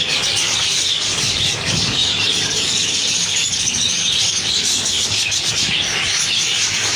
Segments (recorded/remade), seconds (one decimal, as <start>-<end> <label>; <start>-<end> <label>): 0.0-7.0 remade